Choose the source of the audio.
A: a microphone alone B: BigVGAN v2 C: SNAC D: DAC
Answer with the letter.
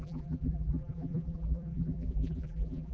B